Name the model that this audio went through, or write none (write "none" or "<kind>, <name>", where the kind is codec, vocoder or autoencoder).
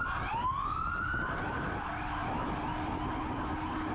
none